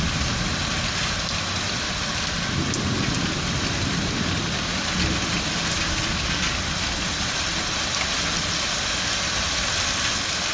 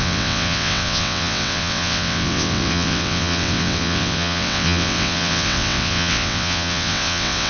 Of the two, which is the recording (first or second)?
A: first